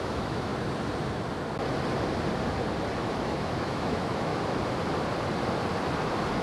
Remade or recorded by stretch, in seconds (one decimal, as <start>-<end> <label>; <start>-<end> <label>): 0.0-0.5 remade; 0.5-3.0 recorded; 3.0-4.3 remade; 4.3-6.4 recorded

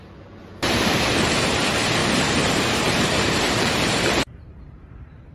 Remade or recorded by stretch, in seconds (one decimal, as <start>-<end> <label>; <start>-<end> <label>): 0.0-0.4 recorded; 0.4-1.1 remade; 1.1-2.0 recorded; 2.0-5.3 remade

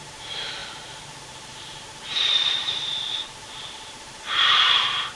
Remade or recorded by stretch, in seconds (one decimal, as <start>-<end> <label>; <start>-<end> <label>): 0.0-5.2 remade